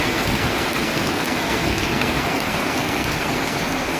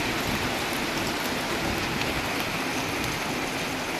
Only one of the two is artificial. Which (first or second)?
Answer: first